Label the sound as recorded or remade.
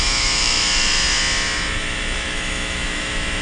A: remade